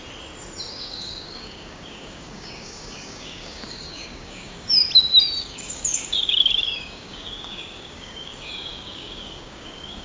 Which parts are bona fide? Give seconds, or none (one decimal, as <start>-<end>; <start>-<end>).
0.0-0.7; 4.8-5.4